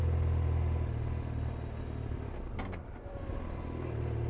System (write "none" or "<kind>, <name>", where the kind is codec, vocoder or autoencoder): none